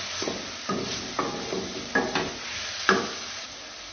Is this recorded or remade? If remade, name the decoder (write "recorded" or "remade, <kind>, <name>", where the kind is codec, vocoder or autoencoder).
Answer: recorded